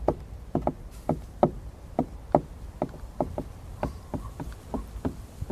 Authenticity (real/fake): fake